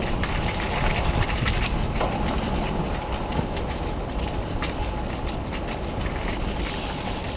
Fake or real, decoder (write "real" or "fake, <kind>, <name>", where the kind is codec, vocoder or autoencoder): real